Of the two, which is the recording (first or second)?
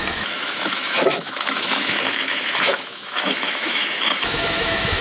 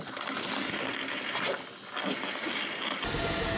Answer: second